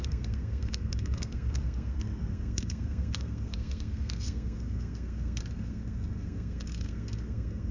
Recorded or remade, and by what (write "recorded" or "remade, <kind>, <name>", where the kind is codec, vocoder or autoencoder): remade, codec, SNAC